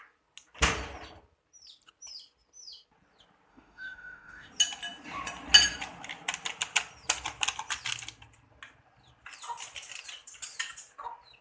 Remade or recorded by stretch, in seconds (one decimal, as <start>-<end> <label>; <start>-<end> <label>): 0.0-3.5 recorded; 3.5-4.5 remade; 4.5-11.4 recorded